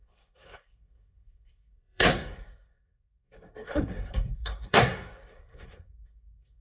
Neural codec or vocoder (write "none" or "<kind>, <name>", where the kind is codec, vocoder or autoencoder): codec, SNAC